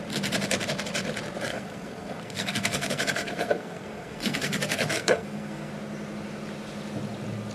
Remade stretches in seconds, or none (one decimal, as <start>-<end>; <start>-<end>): 1.5-5.7